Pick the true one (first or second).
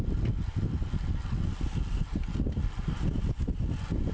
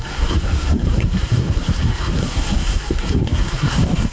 first